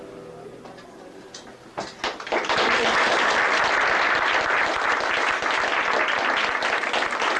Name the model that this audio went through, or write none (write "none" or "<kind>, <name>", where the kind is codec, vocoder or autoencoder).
none